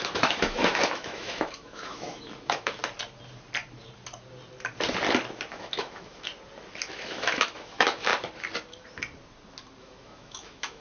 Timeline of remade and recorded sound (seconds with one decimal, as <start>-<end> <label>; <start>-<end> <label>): 0.0-2.8 remade; 2.8-5.5 recorded; 5.5-6.3 remade; 6.3-6.9 recorded; 6.9-8.1 remade; 8.1-9.8 recorded; 9.8-10.8 remade